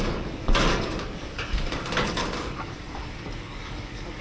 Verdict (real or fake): fake